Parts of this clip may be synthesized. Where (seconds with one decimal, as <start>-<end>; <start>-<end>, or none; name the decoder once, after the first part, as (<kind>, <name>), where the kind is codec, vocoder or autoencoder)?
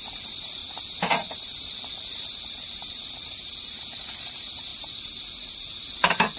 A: 0.0-0.6 (vocoder, BigVGAN v2); 1.3-6.4